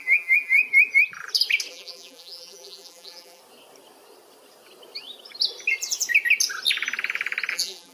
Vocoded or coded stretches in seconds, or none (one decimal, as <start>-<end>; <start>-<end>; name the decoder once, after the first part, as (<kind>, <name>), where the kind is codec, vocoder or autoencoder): 0.0-0.6 (vocoder, BigVGAN v2); 1.7-3.4; 7.5-7.9